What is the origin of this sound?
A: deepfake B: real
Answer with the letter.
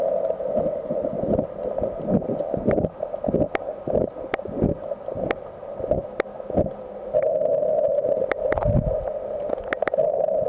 B